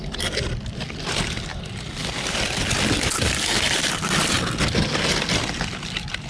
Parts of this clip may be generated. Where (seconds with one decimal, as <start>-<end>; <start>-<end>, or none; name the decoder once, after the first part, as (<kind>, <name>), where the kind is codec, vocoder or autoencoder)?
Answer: none